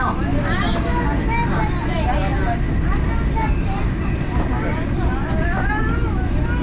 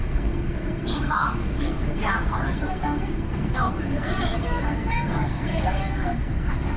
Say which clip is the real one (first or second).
first